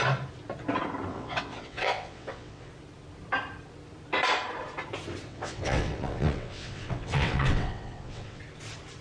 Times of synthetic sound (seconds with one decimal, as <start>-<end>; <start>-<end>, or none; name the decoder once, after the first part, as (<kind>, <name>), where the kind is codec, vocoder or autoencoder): 1.1-2.7 (vocoder, WaveNeXt); 5.3-8.4